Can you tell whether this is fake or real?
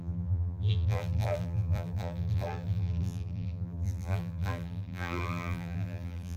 fake